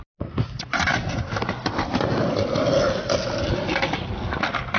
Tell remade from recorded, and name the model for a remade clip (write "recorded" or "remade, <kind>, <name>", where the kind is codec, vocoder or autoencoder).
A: recorded